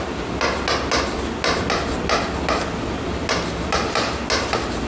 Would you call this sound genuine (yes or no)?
yes